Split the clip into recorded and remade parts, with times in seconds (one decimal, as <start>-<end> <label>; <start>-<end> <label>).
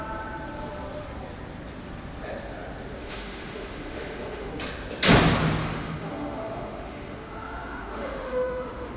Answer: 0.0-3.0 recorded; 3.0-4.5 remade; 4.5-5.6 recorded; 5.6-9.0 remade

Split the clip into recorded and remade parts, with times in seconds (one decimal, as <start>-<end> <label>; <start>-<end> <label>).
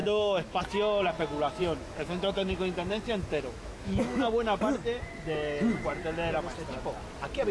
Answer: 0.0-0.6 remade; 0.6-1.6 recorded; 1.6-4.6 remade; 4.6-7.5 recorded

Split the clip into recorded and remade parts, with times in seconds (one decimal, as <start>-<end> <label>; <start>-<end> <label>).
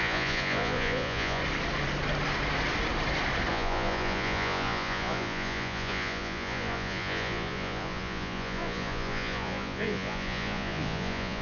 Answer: 0.0-1.4 remade; 1.4-3.5 recorded; 3.5-11.4 remade